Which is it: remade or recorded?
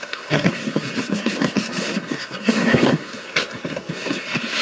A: remade